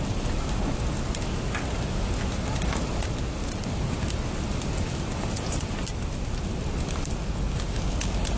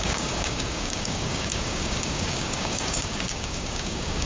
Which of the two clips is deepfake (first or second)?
second